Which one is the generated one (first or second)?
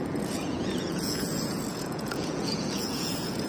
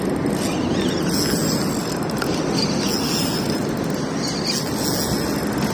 first